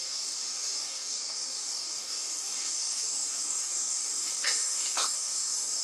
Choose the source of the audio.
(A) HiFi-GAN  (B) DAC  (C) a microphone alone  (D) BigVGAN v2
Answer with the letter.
B